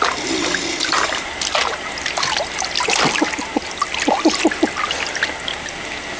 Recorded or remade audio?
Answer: recorded